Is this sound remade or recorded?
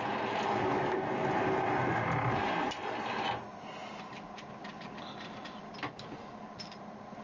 recorded